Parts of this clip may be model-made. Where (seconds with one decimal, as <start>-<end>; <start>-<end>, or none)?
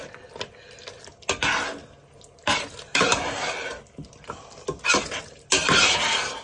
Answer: none